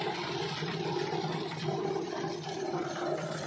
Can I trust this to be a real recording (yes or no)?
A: yes